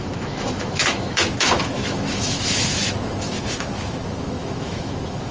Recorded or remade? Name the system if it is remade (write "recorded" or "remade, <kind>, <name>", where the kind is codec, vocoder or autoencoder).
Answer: remade, autoencoder, DAC-VAE